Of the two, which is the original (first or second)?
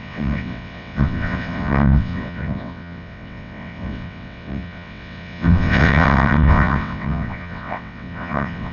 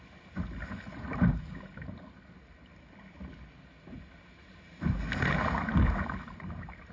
second